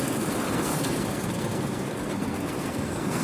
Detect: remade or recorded remade